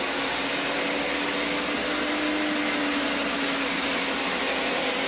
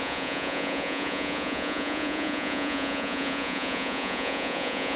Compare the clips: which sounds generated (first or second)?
second